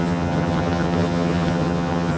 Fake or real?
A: fake